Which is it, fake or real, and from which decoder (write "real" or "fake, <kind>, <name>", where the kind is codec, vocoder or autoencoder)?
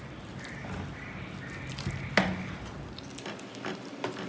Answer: real